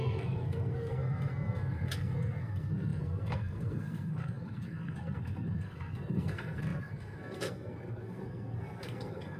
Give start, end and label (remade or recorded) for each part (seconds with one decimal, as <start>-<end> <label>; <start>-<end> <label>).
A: 0.0-9.4 remade